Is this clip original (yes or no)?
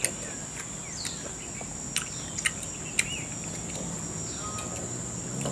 yes